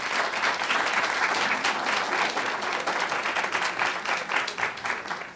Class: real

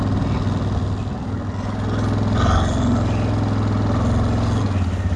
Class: real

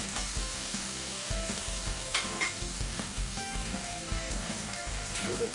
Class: fake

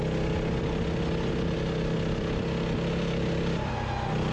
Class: real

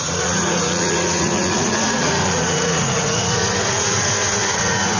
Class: fake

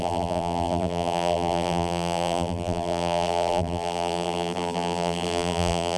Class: fake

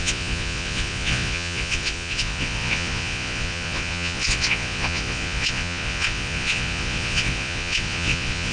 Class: fake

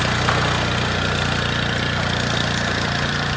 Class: real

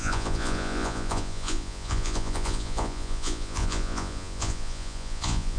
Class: fake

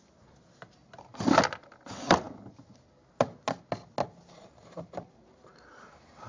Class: real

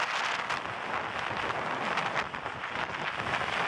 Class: real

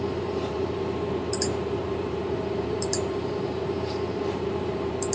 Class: fake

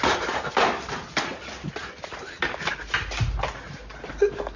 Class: real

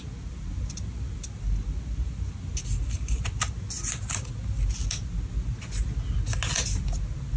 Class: real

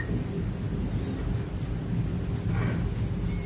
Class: real